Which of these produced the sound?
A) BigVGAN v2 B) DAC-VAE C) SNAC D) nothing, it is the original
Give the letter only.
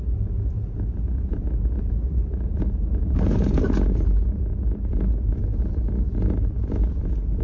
D